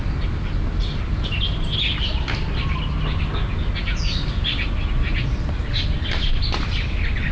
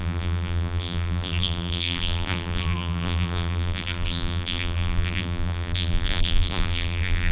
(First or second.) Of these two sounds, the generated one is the second